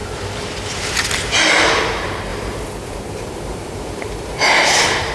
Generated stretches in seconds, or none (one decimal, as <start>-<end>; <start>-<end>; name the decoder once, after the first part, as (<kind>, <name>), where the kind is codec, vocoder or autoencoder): 1.8-5.1 (vocoder, BigVGAN v2)